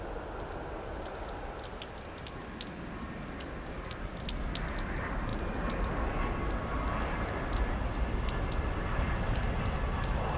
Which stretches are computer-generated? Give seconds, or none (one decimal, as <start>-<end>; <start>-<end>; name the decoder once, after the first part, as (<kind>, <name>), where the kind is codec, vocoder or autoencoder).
none